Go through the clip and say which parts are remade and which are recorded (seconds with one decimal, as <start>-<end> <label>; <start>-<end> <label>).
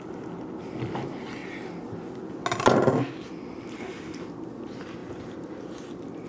0.0-5.0 recorded; 5.0-5.6 remade; 5.6-6.3 recorded